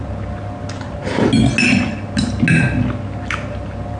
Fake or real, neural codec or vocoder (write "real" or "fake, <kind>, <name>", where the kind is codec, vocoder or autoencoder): real